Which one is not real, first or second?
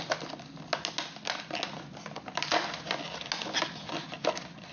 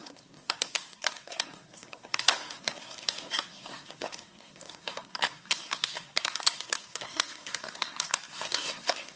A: second